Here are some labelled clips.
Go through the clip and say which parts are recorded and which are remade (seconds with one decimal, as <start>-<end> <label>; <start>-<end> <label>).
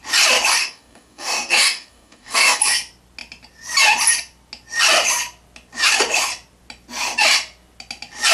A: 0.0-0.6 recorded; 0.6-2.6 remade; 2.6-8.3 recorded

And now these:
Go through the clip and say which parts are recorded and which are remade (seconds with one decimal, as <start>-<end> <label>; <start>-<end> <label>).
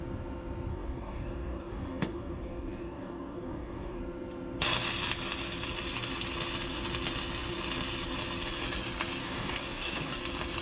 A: 0.0-0.7 recorded; 0.7-4.0 remade; 4.0-9.2 recorded; 9.2-10.2 remade; 10.2-10.6 recorded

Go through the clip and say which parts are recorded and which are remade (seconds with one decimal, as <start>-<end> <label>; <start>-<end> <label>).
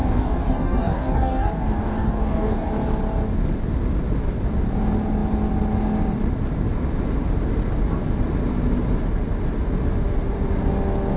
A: 0.0-2.7 remade; 2.7-11.2 recorded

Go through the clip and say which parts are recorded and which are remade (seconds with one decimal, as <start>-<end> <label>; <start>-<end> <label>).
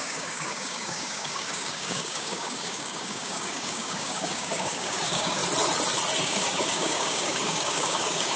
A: 0.0-5.4 remade; 5.4-6.2 recorded; 6.2-8.4 remade